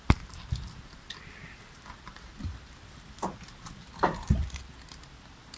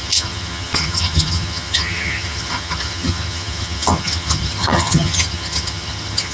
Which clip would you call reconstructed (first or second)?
second